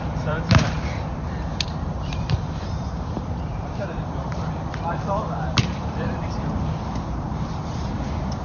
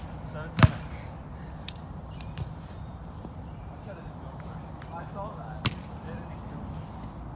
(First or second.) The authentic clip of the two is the second